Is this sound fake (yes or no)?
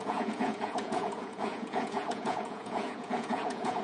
yes